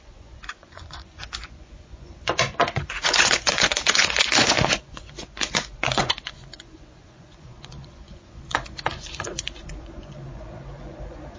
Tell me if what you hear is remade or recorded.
remade